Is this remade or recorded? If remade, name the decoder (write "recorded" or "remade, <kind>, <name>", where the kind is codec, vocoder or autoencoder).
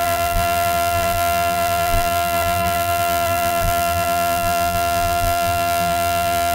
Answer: remade, vocoder, BigVGAN v2